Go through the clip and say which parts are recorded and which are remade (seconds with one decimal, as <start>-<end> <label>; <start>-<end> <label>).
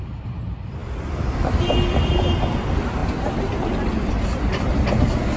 0.0-5.4 recorded